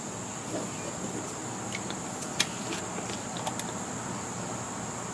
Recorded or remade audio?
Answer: recorded